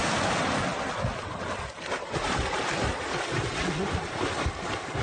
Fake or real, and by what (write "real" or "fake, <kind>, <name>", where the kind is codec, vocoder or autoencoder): real